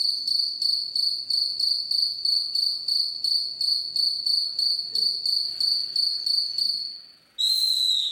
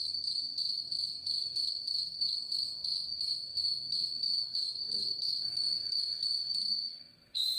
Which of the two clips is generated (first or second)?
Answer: second